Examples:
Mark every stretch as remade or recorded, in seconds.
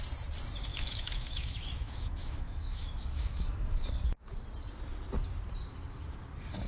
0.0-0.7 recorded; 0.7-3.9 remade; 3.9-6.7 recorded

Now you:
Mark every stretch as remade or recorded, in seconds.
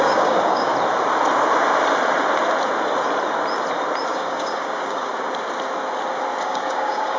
0.0-0.7 remade; 0.7-4.1 recorded; 4.1-5.1 remade; 5.1-6.4 recorded; 6.4-7.2 remade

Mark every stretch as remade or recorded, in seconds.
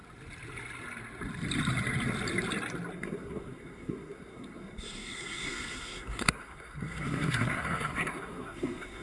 0.0-2.9 recorded; 2.9-9.0 remade